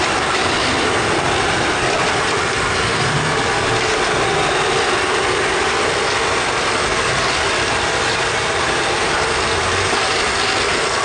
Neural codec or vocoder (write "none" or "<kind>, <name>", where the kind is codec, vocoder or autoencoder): none